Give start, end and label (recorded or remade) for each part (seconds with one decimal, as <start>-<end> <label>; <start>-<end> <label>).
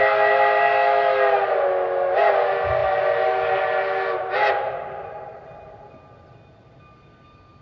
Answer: 0.0-7.6 recorded